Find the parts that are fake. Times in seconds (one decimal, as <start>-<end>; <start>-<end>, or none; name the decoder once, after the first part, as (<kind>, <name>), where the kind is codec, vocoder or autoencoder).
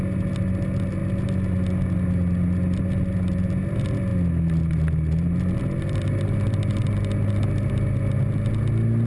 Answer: none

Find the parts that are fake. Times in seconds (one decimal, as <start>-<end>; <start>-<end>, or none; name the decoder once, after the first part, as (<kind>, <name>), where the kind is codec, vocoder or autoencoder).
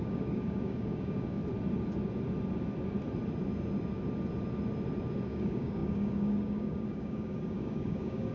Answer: 0.0-1.4 (codec, DAC); 5.2-8.3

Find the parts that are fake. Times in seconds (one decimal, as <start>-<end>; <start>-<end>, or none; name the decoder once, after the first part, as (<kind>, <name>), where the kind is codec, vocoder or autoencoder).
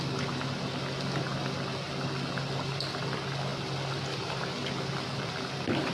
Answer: none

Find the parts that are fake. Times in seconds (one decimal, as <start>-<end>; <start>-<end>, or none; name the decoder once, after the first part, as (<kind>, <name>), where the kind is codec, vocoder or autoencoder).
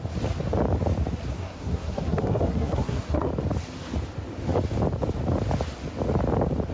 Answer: 1.3-3.3 (codec, SNAC)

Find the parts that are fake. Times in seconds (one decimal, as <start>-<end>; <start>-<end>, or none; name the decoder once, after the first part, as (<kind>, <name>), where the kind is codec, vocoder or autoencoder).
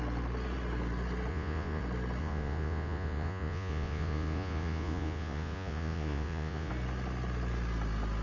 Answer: 1.3-1.8 (vocoder, Vocos); 2.2-6.7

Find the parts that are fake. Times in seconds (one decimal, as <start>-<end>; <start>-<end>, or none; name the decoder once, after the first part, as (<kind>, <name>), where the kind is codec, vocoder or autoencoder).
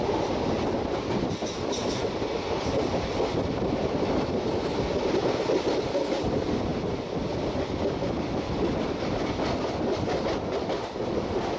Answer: none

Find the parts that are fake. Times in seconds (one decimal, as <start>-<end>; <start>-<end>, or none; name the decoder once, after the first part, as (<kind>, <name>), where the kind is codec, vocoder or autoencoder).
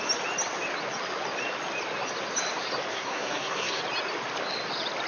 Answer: 2.9-3.8 (codec, SNAC)